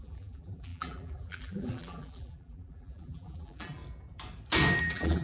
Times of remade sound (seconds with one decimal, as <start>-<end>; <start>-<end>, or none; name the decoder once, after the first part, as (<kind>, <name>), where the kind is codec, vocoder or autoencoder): 0.0-3.8 (vocoder, BigVGAN v2); 4.8-5.2